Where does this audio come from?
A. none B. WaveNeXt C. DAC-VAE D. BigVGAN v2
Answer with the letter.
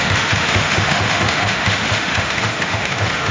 C